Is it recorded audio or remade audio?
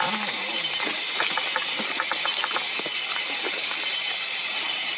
recorded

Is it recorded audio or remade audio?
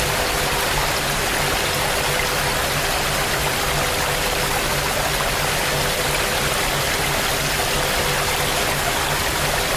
recorded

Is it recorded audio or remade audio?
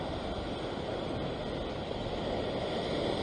recorded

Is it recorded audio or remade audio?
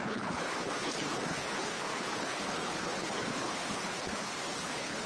remade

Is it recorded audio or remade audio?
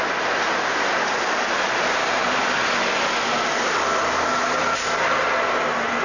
recorded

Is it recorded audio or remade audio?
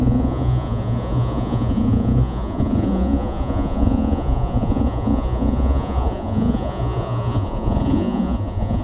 remade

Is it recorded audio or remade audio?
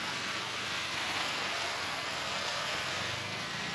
remade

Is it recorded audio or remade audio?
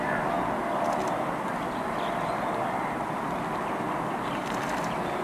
recorded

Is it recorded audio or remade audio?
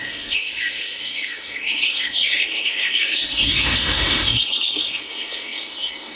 remade